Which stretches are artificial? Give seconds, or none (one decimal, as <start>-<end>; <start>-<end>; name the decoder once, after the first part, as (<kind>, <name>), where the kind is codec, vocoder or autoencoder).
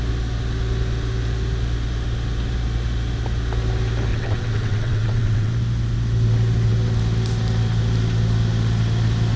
4.1-5.5 (vocoder, WaveNeXt)